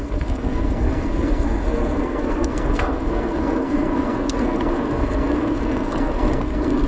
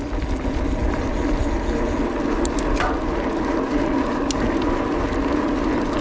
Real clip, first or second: second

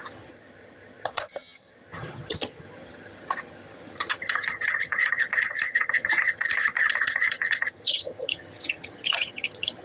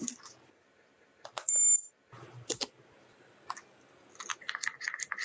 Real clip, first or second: second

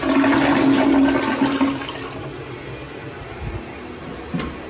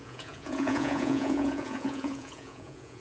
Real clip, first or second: first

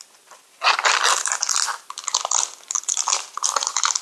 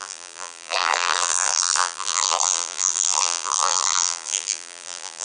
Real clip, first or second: first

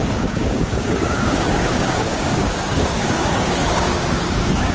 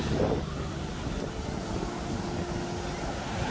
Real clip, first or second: second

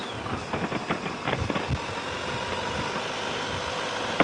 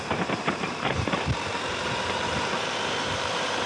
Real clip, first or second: first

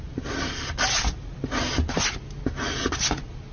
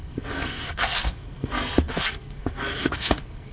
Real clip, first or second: first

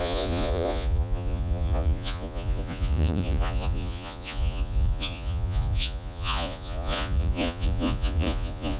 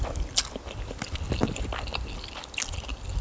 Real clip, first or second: second